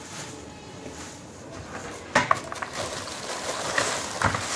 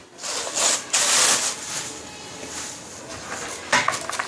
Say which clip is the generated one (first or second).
first